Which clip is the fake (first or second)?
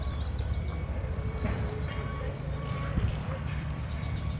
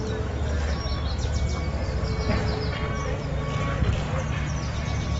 first